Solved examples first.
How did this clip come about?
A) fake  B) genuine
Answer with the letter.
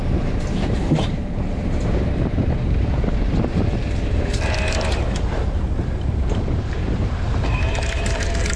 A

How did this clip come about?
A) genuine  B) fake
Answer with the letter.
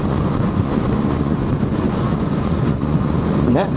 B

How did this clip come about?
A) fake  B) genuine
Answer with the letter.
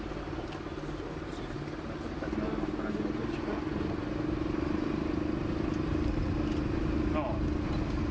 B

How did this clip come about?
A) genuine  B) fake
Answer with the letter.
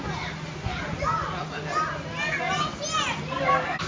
A